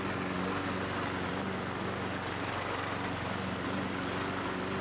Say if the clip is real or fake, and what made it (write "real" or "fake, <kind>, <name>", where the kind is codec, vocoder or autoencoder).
real